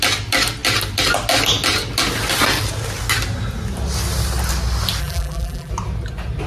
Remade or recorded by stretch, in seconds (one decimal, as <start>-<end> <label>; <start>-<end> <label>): 0.0-5.0 recorded; 5.0-5.7 remade; 5.7-6.5 recorded